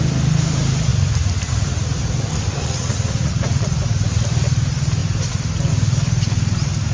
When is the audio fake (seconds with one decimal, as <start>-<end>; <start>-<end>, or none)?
2.6-3.8